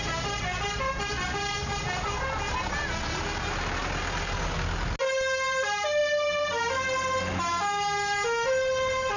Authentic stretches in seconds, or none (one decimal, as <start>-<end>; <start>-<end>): 0.0-9.2